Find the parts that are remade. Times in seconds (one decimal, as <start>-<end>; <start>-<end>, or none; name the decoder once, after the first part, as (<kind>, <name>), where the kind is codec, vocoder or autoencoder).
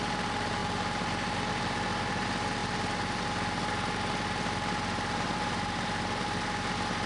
none